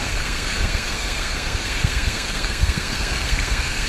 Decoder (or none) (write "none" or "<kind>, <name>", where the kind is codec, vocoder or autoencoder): codec, SNAC